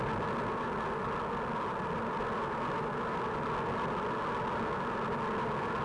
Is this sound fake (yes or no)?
no